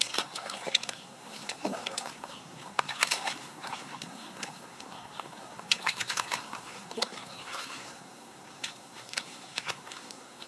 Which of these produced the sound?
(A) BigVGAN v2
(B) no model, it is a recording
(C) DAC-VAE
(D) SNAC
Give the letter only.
D